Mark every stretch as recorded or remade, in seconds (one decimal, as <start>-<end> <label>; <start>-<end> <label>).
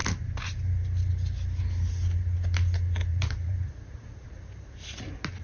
0.0-3.1 recorded; 3.1-5.0 remade; 5.0-5.4 recorded